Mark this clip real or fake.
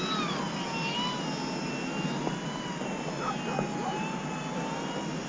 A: real